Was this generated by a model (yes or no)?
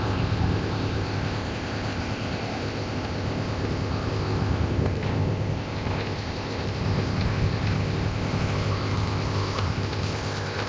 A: yes